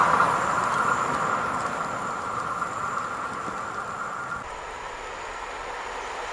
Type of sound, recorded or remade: recorded